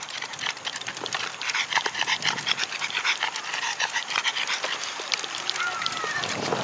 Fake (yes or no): yes